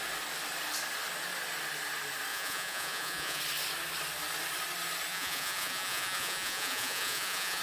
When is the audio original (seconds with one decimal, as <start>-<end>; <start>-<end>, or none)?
0.0-2.3; 3.4-5.1